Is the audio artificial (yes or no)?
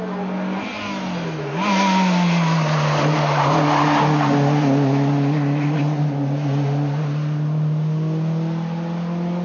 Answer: no